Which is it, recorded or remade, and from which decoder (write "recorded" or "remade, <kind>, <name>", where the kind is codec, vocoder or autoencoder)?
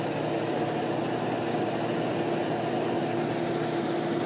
recorded